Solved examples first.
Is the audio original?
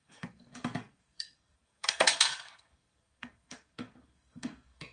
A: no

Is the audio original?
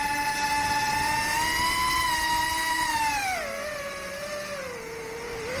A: yes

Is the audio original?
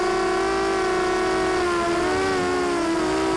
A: yes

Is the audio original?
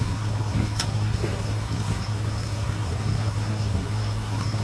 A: no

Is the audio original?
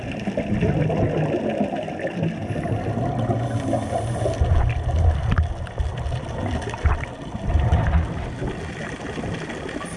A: yes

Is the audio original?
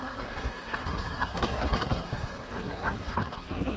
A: no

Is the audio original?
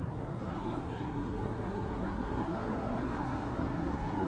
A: no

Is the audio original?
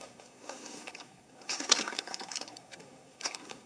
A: no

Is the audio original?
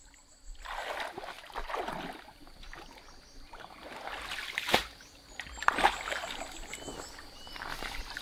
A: yes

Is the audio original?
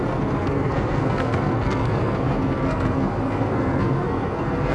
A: no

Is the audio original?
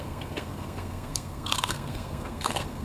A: no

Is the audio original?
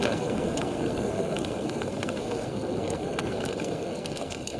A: no